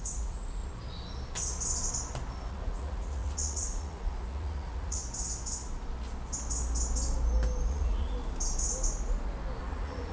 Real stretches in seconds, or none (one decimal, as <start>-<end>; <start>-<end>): 0.6-2.5; 5.0-7.7; 8.2-9.6